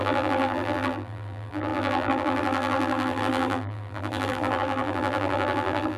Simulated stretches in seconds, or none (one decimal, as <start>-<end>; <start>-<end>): 0.0-6.0